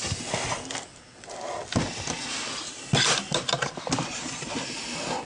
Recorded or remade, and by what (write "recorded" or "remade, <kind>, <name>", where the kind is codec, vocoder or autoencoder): recorded